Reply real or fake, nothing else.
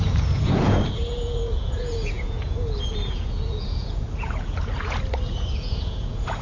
fake